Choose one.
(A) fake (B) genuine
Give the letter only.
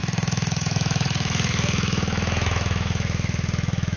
A